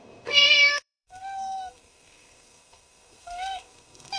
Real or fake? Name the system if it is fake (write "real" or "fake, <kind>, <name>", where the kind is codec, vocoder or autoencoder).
fake, codec, SNAC